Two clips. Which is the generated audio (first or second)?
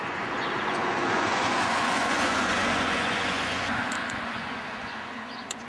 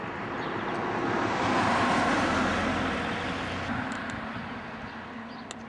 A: first